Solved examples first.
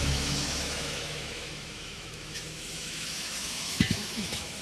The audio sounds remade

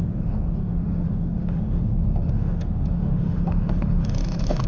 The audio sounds remade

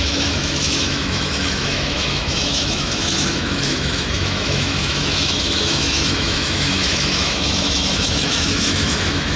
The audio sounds remade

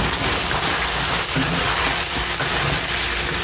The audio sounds recorded